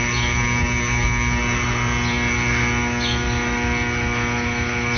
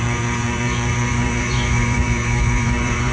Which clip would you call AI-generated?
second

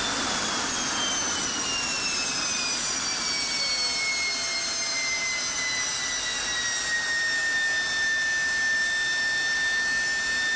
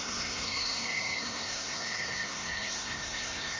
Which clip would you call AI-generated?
second